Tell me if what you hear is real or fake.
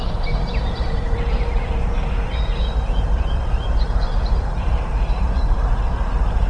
fake